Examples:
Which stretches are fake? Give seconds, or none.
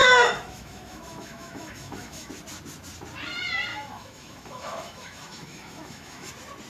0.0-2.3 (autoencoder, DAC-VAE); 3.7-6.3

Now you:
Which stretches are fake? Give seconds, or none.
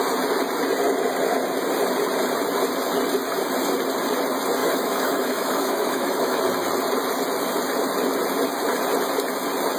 4.6-6.4 (autoencoder, DAC-VAE)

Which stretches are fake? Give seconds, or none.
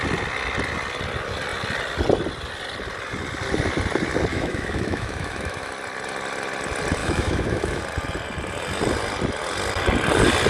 4.3-5.7 (autoencoder, DAC-VAE); 7.0-7.8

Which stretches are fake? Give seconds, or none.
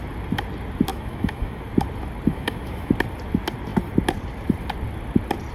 0.9-1.6 (autoencoder, DAC-VAE); 2.3-2.9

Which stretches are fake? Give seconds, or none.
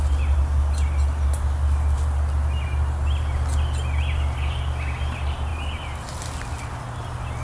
none